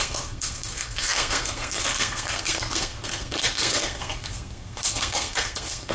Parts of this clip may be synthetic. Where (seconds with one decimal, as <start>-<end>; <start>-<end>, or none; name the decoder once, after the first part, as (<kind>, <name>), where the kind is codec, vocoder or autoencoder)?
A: 0.0-5.9 (codec, SNAC)

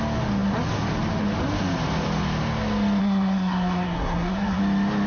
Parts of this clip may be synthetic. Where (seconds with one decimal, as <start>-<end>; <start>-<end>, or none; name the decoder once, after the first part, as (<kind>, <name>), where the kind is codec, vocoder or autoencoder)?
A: 3.0-4.6 (codec, SNAC)